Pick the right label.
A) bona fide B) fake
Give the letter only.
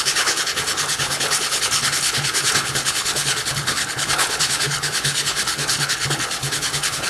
B